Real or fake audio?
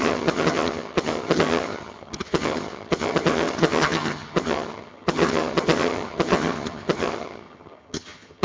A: fake